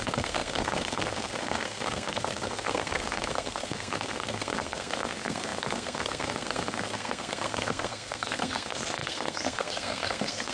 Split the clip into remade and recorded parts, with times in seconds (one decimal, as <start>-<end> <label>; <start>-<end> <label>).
0.0-10.5 remade